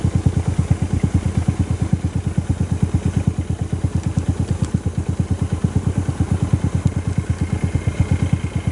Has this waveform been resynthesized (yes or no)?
no